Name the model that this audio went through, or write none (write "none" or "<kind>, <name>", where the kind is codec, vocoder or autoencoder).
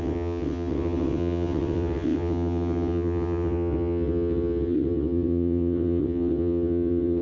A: vocoder, WaveNeXt